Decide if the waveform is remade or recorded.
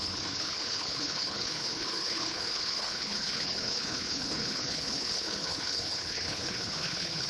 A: remade